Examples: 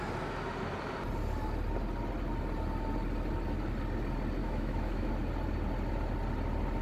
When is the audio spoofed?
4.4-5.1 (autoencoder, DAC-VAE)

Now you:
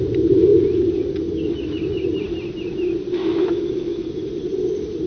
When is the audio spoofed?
3.2-4.3 (autoencoder, DAC-VAE)

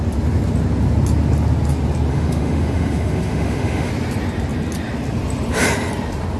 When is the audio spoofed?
2.1-3.9 (autoencoder, DAC-VAE)